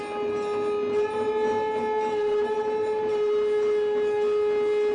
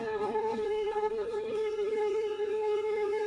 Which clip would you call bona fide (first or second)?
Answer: first